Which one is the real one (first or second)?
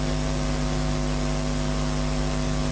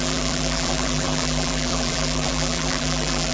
first